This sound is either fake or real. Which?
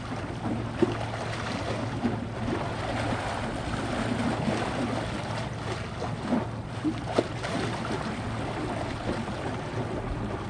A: real